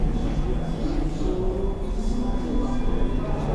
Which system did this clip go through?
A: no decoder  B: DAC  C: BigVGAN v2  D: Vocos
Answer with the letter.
A